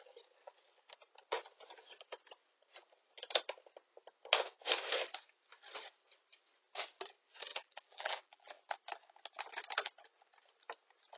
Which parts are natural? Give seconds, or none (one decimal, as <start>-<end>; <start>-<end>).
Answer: 0.0-7.5; 8.6-11.2